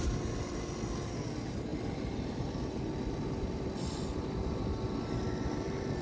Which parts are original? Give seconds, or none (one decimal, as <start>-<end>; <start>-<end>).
0.0-6.0